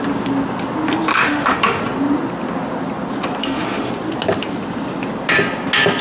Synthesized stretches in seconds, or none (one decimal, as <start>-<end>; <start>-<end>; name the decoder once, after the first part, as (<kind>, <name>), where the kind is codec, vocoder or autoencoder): 1.1-1.8 (autoencoder, DAC-VAE); 3.4-3.9